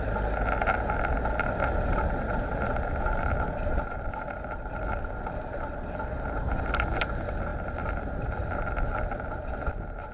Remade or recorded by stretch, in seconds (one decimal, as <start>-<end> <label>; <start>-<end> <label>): 0.0-10.1 recorded